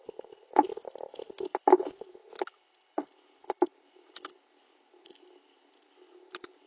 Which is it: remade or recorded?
recorded